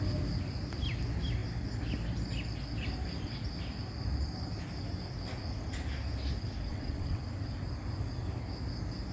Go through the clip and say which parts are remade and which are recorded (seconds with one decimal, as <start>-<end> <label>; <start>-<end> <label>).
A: 0.0-6.7 recorded; 6.7-7.2 remade; 7.2-9.1 recorded